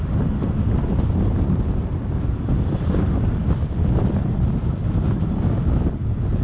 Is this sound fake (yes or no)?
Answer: no